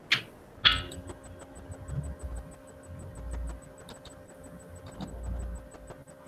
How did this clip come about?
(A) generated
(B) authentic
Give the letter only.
B